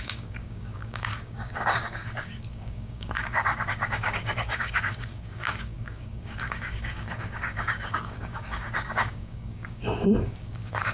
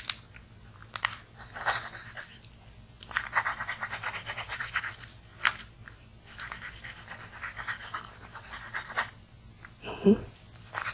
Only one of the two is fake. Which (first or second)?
first